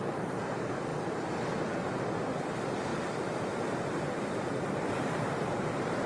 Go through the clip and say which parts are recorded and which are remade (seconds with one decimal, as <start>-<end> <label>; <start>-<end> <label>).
0.0-0.9 remade; 0.9-2.3 recorded; 2.3-6.1 remade